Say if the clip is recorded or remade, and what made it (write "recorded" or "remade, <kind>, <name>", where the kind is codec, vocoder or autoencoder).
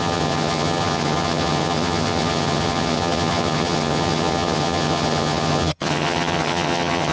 remade, vocoder, HiFi-GAN